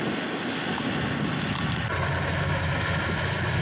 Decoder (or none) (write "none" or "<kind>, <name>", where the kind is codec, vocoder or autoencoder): none